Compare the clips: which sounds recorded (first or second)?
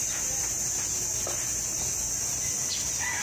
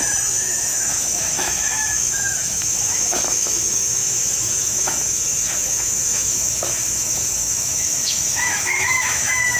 first